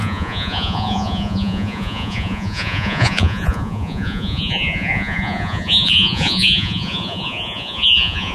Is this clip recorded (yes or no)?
no